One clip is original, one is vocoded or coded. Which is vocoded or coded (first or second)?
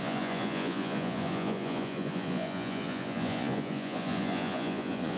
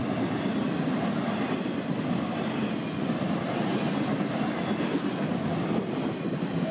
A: first